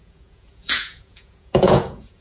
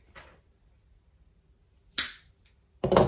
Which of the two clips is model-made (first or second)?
first